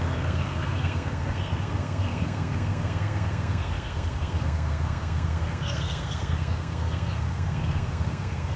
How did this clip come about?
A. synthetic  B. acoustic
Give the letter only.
A